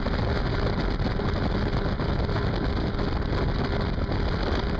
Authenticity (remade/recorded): recorded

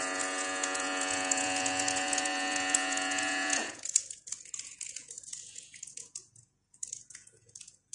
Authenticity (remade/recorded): remade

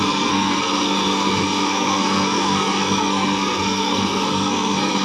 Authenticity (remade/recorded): remade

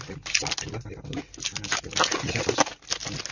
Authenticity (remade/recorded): recorded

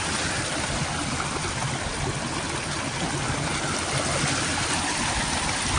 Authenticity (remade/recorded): recorded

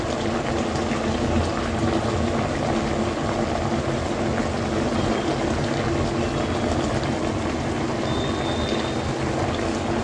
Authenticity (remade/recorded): recorded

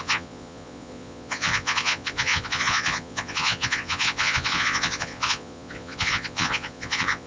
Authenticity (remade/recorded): remade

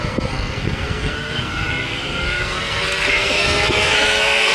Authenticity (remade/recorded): remade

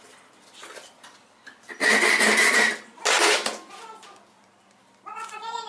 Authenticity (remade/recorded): recorded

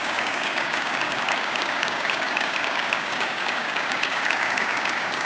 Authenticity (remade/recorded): remade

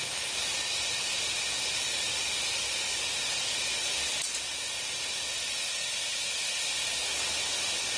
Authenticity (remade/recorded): recorded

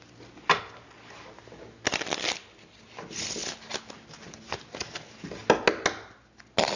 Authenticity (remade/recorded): recorded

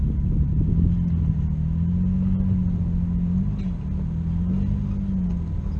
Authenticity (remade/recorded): recorded